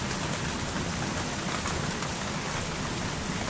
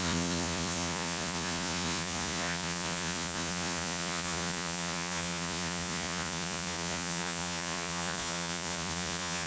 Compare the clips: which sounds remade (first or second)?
second